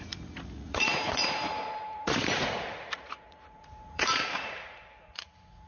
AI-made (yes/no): yes